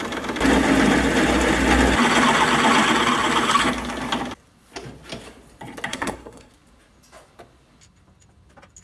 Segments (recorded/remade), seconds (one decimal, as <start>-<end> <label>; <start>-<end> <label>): 0.0-5.9 recorded; 5.9-6.5 remade; 6.5-8.8 recorded